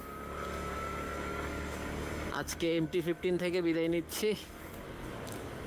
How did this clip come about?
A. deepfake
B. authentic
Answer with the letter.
A